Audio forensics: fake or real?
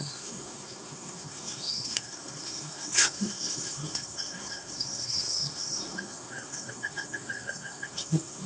fake